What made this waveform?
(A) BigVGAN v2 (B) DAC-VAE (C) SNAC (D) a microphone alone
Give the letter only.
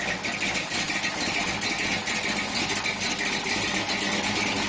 D